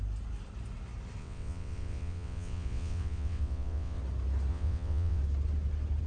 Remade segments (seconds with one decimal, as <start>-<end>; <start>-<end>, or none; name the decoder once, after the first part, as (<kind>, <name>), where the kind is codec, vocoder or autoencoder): 1.2-4.0 (vocoder, WaveNeXt); 4.5-5.2